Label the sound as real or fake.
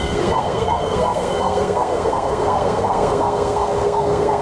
fake